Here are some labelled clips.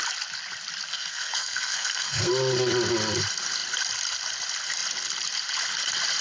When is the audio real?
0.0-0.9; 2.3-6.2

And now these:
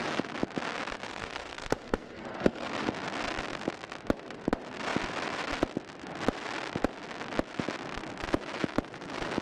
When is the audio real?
0.0-1.1; 2.7-9.4

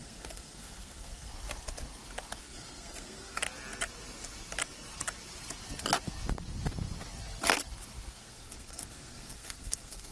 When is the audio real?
1.3-2.4; 3.4-8.1

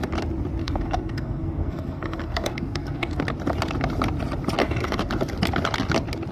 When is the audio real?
0.0-0.6; 3.2-4.6; 5.1-6.3

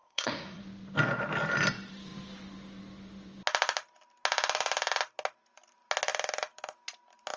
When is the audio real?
0.6-7.4